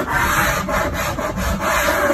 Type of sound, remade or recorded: recorded